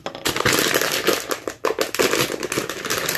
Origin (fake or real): real